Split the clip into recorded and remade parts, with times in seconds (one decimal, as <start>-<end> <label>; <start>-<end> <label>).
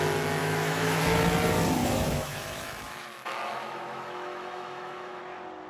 0.0-0.4 recorded; 0.4-1.0 remade; 1.0-1.8 recorded; 1.8-5.2 remade; 5.2-5.7 recorded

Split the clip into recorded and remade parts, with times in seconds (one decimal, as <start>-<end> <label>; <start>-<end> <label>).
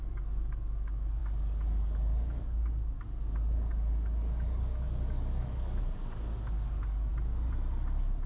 0.0-7.1 remade; 7.1-8.3 recorded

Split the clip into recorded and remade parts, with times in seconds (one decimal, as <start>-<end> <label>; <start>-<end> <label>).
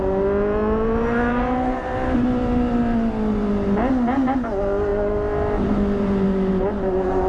0.0-7.3 recorded